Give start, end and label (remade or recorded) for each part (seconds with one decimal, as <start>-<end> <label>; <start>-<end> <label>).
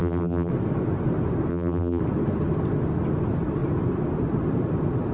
0.0-0.5 remade; 0.5-1.5 recorded; 1.5-2.0 remade; 2.0-5.1 recorded